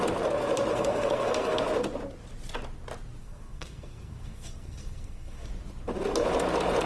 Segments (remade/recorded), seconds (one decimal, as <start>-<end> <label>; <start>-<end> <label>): 0.0-0.7 recorded; 0.7-1.6 remade; 1.6-3.2 recorded; 3.2-5.5 remade; 5.5-6.9 recorded

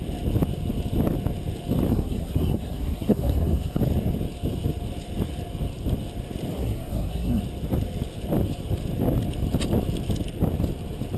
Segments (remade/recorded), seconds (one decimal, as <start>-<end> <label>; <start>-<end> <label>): 0.0-1.9 recorded; 1.9-3.8 remade; 3.8-6.5 recorded; 6.5-7.4 remade; 7.4-11.2 recorded

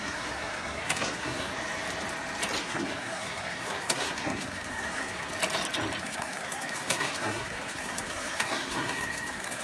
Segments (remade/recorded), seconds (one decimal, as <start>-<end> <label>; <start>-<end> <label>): 0.0-1.5 remade; 1.5-2.6 recorded; 2.6-5.3 remade; 5.3-6.0 recorded; 6.0-9.6 remade